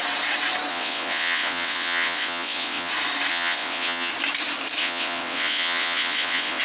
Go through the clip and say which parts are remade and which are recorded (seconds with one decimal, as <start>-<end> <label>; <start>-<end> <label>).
0.0-0.7 recorded; 0.7-2.9 remade; 2.9-3.3 recorded; 3.3-4.1 remade; 4.1-4.8 recorded; 4.8-6.6 remade